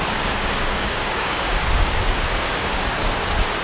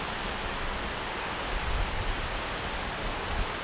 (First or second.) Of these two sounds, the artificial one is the first